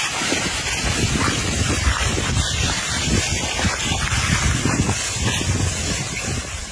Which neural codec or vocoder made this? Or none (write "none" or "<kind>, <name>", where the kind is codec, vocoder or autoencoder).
vocoder, BigVGAN v2